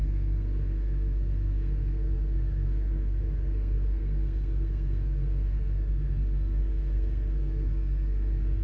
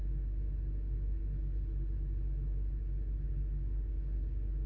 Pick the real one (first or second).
second